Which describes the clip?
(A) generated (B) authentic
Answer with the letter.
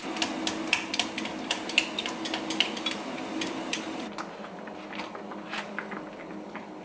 B